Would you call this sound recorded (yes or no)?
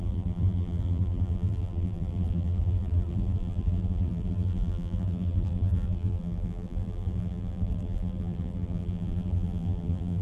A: no